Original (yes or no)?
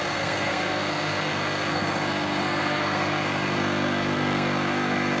no